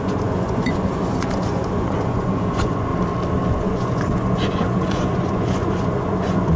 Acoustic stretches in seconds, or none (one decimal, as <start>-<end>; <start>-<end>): 2.9-3.5